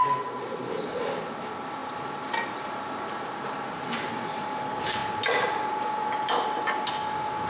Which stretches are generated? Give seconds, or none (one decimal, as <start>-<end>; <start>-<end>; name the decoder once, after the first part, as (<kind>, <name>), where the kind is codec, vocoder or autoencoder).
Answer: none